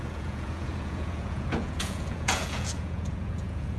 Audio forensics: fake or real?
fake